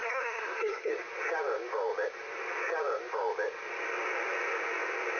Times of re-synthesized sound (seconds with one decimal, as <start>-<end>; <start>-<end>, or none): 0.0-0.9